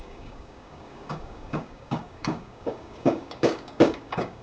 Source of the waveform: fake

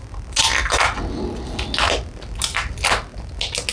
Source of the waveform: real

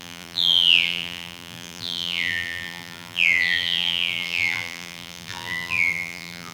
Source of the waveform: fake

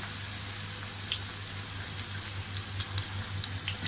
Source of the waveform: real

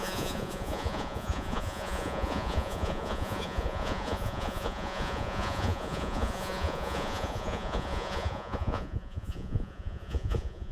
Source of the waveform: fake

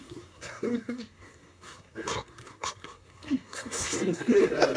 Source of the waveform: fake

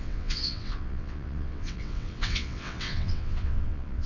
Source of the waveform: fake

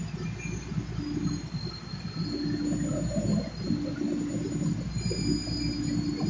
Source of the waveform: real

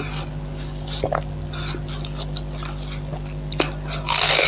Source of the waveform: real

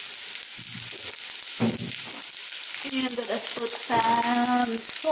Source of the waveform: real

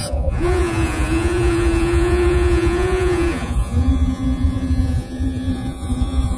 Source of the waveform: fake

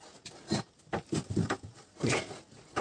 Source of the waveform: real